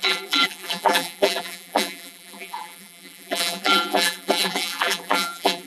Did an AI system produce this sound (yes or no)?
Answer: yes